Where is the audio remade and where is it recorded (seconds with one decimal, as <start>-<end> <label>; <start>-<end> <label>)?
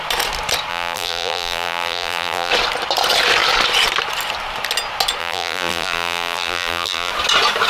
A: 0.0-0.7 recorded; 0.7-2.5 remade; 2.5-5.2 recorded; 5.2-7.1 remade; 7.1-7.7 recorded